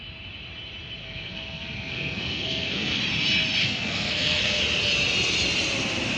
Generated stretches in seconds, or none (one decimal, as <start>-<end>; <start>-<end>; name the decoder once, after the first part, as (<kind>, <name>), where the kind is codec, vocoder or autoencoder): 1.0-3.0 (codec, SNAC); 3.6-4.6